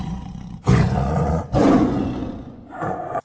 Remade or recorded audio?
remade